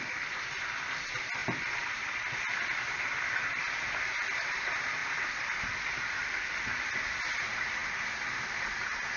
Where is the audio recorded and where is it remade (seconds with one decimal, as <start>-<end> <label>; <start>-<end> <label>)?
0.0-1.4 recorded; 1.4-3.6 remade; 3.6-5.0 recorded; 5.0-6.9 remade; 6.9-7.8 recorded; 7.8-8.3 remade; 8.3-9.2 recorded